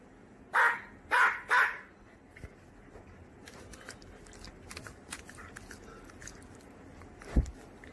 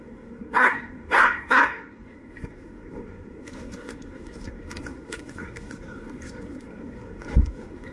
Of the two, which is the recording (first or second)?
first